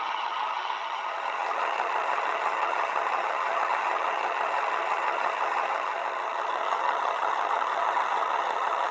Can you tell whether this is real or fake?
fake